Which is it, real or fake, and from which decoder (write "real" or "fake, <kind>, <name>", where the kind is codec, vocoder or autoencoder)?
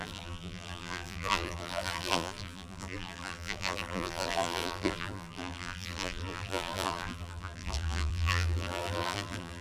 fake, vocoder, BigVGAN v2